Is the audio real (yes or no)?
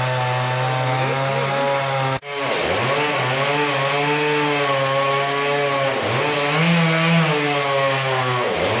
yes